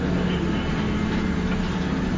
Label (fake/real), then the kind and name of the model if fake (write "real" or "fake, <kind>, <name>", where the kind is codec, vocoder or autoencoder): real